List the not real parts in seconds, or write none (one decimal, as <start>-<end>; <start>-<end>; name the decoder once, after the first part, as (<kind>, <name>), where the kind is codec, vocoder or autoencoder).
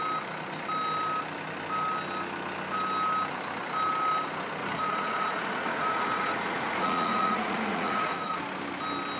4.6-8.4 (vocoder, Vocos)